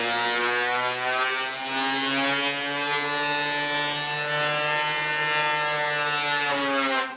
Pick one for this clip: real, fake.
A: real